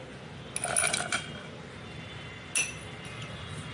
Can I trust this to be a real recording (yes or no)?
yes